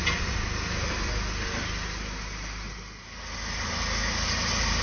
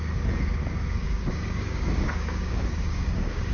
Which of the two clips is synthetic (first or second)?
second